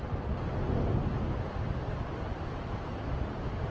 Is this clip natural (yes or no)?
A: yes